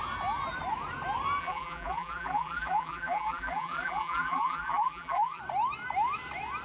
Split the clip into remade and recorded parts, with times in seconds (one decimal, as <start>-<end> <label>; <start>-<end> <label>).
0.0-1.4 recorded; 1.4-5.4 remade; 5.4-6.6 recorded